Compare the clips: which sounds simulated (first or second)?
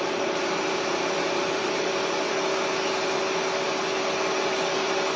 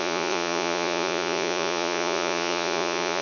second